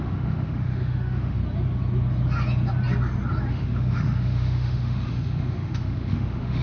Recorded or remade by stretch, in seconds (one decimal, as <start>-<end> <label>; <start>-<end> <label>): 0.0-1.4 remade; 1.4-3.5 recorded; 3.5-6.6 remade